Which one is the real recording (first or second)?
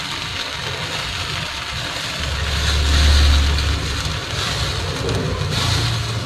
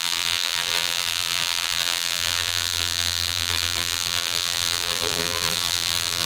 first